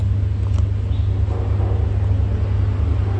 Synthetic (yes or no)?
no